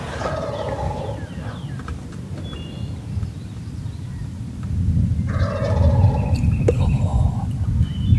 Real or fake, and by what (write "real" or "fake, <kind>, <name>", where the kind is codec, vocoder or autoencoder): real